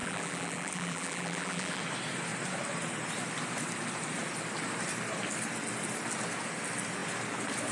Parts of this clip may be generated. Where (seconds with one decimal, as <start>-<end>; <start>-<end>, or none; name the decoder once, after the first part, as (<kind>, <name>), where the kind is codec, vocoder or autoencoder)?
0.0-1.8 (vocoder, BigVGAN v2)